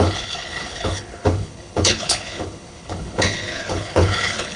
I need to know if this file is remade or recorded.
remade